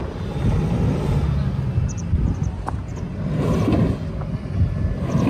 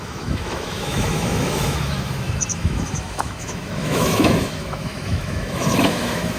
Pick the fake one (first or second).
second